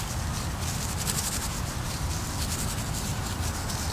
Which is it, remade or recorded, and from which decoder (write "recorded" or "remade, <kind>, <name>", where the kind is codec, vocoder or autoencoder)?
recorded